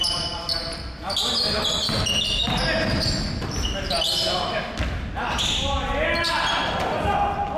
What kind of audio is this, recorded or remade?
recorded